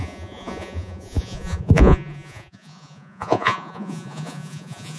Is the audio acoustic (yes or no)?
no